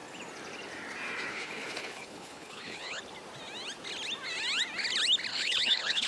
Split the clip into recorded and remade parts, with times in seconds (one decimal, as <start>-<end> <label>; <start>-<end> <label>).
0.0-1.3 recorded; 1.3-3.0 remade; 3.0-5.3 recorded; 5.3-6.1 remade